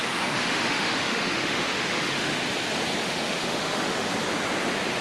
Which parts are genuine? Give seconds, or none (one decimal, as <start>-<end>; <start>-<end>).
2.4-3.0; 4.1-5.0